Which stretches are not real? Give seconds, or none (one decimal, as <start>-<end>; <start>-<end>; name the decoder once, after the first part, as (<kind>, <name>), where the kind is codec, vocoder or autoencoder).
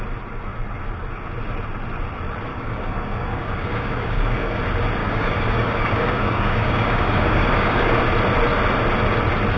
2.5-4.6 (codec, DAC); 5.0-8.0